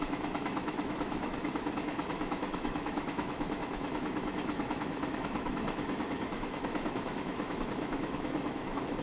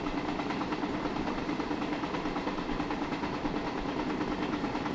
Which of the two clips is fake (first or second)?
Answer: first